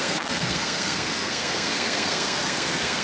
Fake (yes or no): yes